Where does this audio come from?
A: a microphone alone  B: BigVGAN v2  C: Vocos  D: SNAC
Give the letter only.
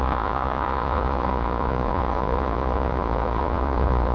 C